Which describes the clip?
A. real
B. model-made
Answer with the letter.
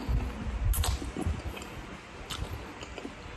A